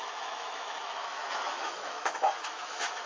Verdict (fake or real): fake